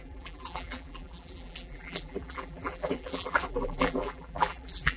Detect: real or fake fake